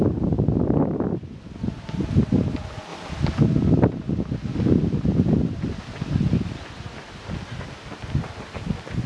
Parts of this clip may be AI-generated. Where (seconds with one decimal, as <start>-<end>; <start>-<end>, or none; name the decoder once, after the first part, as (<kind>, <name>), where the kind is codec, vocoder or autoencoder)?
none